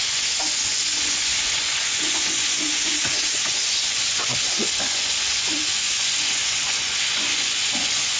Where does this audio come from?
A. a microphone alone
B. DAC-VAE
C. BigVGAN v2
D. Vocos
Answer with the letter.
D